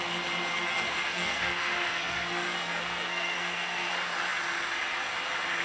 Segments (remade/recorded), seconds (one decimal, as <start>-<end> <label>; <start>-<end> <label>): 0.0-0.5 recorded; 0.5-3.9 remade; 3.9-5.6 recorded